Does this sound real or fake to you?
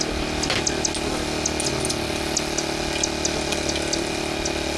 real